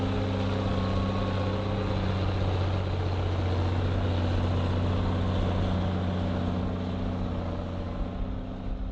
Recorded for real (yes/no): yes